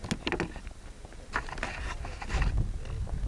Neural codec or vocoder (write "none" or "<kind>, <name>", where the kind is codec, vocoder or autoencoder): none